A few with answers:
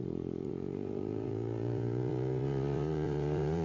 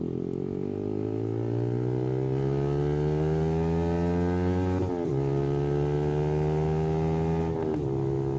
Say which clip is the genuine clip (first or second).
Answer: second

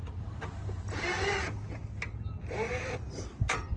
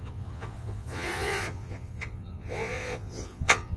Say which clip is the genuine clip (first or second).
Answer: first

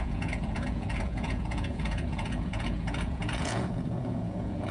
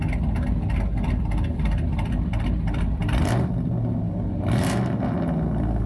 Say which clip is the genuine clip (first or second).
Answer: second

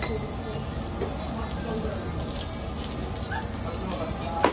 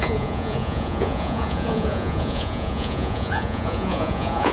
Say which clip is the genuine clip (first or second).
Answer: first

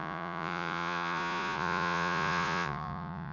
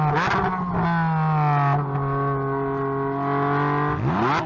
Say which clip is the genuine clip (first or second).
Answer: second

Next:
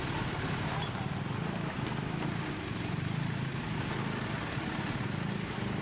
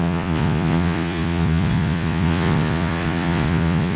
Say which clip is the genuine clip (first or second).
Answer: first